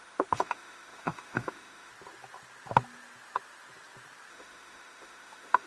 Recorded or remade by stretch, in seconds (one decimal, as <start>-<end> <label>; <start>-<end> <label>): 0.0-1.9 remade; 1.9-4.3 recorded; 4.3-5.7 remade